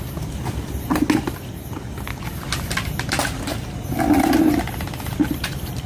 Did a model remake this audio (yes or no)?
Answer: no